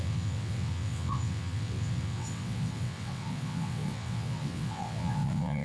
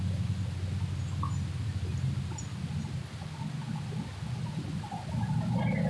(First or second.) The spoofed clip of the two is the first